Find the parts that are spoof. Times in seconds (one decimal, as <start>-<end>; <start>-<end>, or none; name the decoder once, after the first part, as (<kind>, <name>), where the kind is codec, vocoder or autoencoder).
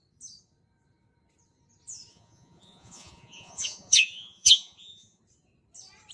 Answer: 2.1-5.2 (vocoder, Vocos)